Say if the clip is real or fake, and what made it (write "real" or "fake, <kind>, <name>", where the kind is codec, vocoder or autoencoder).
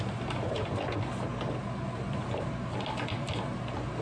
real